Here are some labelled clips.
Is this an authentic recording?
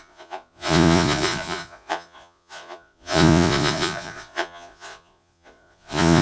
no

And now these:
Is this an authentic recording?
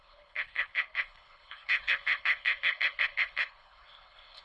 no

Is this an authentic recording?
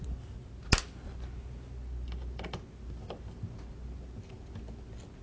yes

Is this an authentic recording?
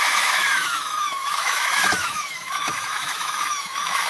no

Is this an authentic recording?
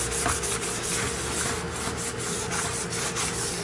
yes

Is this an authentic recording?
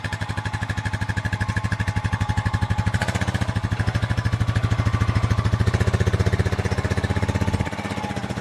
yes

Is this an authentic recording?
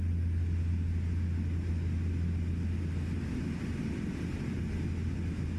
yes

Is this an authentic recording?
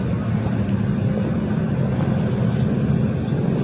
yes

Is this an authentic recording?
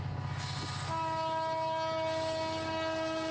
yes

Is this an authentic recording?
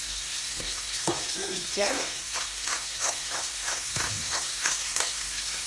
no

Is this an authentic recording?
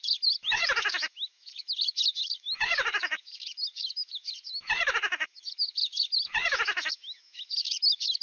no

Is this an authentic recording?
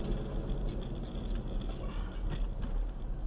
yes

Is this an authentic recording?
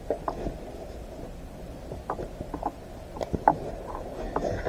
yes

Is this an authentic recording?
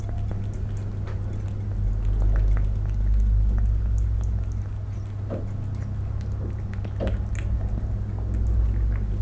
yes